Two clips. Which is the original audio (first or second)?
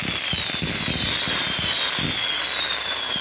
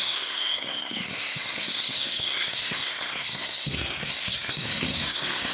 first